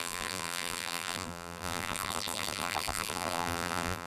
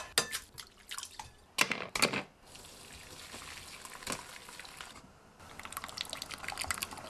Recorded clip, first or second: second